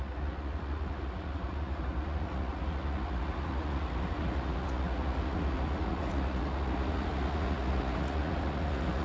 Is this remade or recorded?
remade